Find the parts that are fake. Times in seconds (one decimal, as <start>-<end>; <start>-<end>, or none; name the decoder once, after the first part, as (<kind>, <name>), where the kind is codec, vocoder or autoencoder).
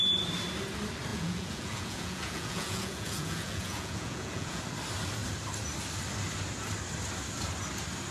1.1-4.6 (vocoder, Vocos)